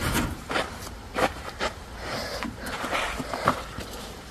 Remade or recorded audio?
remade